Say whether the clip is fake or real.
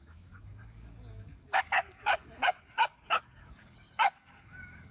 fake